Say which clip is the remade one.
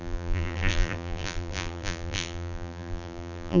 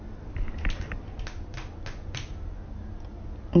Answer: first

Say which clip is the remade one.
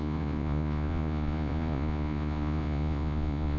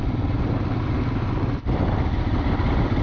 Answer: first